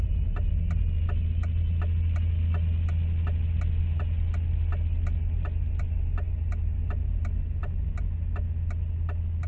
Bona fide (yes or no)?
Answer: yes